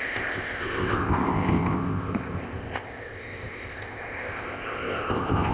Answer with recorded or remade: remade